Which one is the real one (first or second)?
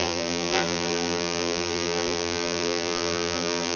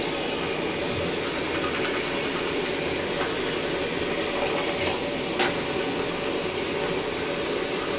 second